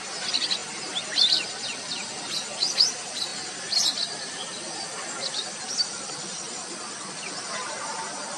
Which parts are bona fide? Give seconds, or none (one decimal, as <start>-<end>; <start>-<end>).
0.0-8.4